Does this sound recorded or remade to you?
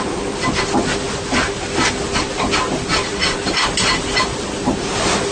recorded